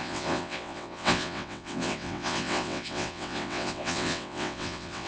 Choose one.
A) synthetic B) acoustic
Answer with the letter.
A